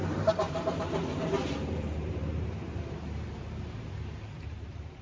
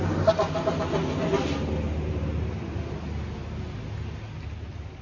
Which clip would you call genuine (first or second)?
second